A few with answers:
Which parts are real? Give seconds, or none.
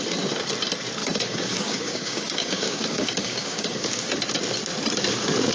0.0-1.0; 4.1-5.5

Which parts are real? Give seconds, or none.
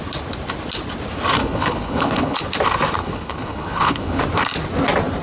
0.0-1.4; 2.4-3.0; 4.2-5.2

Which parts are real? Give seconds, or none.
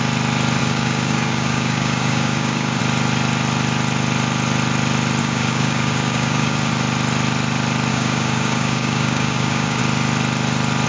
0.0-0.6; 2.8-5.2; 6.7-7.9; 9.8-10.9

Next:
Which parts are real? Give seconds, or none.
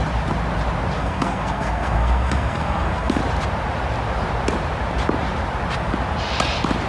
0.0-1.0; 3.2-6.9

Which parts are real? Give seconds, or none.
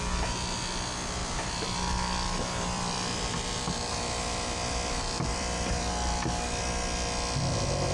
0.0-1.2; 5.9-7.9